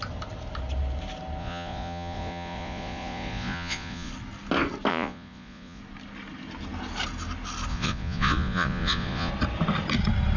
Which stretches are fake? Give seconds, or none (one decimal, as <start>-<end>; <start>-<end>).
1.4-4.1; 4.9-5.8; 7.7-9.3